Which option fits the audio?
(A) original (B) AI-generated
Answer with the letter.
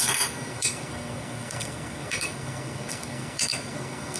B